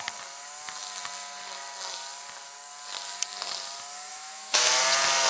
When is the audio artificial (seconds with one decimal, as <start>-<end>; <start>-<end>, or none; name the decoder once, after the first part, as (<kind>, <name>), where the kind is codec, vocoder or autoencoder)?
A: 4.1-4.8 (autoencoder, DAC-VAE)